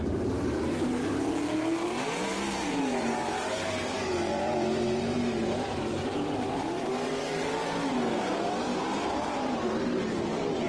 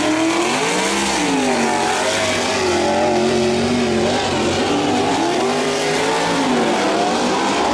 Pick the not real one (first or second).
first